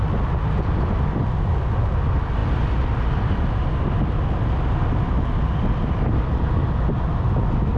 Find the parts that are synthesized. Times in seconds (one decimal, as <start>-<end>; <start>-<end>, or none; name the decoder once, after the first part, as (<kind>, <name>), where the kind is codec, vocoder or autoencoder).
none